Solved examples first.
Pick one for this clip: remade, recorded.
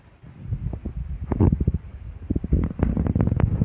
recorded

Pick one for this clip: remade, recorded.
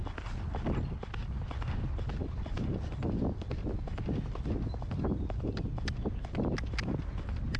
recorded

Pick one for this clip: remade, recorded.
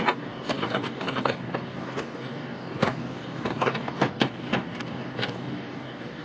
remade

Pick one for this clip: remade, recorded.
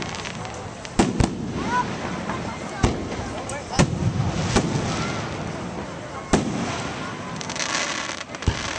recorded